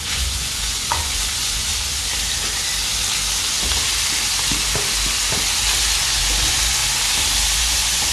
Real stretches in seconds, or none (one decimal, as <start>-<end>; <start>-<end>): 1.7-6.0; 6.8-7.6